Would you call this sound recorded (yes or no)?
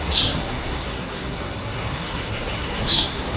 no